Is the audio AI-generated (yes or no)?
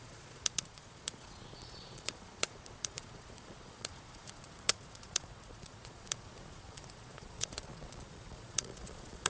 yes